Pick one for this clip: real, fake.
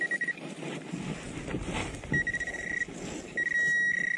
real